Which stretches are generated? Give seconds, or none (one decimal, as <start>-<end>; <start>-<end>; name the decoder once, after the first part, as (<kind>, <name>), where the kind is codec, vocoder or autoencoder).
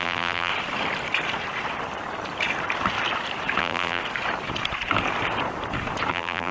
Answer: 0.0-0.5 (vocoder, BigVGAN v2); 3.6-4.0; 6.1-6.5